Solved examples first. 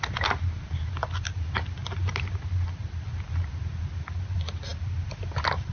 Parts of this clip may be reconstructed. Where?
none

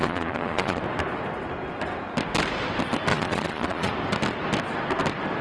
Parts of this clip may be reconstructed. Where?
0.0-0.8 (vocoder, Vocos); 3.1-3.9

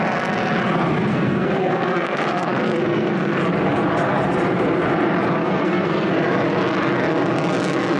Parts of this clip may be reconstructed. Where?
1.1-3.4 (codec, SNAC); 5.4-6.1

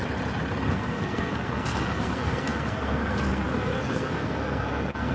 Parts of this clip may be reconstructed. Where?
0.7-5.1 (codec, SNAC)

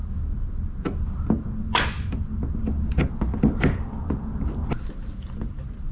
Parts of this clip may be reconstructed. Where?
3.5-5.9 (vocoder, BigVGAN v2)

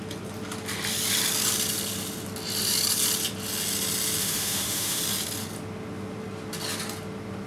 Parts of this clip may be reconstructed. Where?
4.2-5.0 (autoencoder, DAC-VAE)